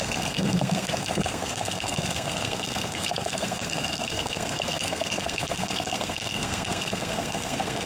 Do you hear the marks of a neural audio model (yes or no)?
yes